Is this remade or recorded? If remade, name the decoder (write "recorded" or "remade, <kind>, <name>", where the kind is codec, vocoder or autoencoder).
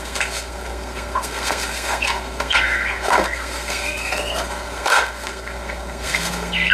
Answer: remade, codec, SNAC